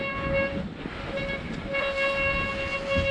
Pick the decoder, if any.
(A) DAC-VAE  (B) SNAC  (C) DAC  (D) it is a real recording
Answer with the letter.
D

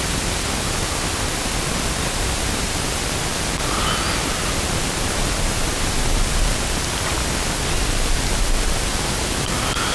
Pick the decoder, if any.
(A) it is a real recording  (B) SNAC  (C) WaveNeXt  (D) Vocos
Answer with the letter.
A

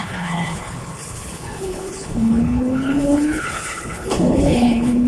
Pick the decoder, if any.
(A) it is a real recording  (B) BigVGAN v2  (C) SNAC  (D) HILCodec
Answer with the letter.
D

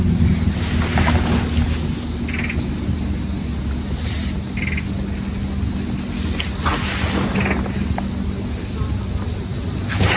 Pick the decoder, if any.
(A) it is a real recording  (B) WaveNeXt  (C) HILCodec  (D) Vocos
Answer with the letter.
A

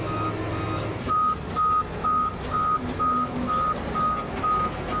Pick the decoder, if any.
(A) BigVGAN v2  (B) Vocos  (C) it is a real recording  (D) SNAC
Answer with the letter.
C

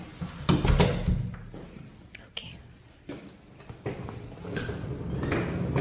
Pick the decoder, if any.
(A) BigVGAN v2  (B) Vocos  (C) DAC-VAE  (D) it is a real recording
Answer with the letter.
D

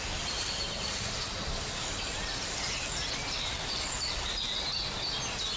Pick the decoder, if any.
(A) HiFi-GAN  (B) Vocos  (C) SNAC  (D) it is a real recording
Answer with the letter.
D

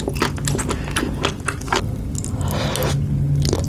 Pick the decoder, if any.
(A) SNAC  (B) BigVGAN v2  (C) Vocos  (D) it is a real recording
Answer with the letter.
D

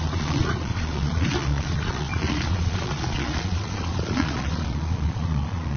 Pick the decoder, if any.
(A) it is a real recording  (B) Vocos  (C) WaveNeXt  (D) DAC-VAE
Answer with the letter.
B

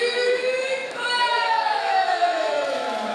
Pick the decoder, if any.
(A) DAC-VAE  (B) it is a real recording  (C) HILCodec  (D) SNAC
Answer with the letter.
A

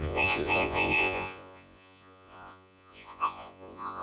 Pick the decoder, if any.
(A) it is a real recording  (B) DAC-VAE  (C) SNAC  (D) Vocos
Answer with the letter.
D